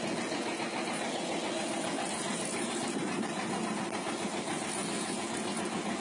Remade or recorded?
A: recorded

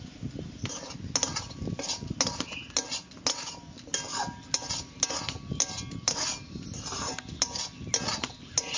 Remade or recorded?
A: recorded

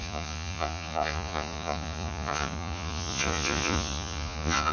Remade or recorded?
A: remade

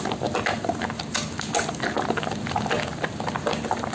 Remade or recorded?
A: recorded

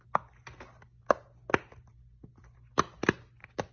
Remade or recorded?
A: recorded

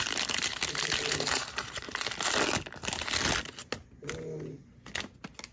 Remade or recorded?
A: recorded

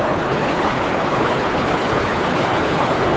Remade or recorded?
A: remade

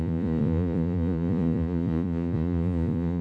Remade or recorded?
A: remade